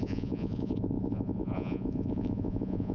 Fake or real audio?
fake